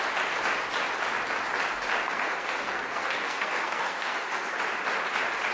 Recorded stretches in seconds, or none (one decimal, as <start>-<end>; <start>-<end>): 0.0-2.0; 4.6-5.5

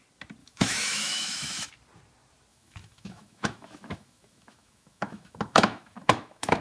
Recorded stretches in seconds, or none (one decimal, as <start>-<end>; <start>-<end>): 0.0-0.4; 1.7-2.5

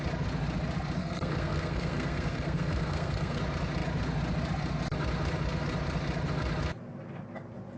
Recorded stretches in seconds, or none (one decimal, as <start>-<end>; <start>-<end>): 0.0-1.0; 3.4-7.8